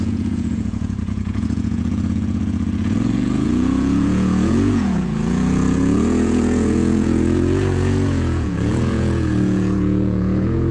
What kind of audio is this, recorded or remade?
remade